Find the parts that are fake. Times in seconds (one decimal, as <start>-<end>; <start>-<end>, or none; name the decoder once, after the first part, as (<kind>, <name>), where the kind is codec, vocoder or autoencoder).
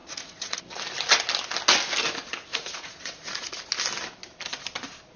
0.0-0.6 (vocoder, Vocos); 2.5-3.5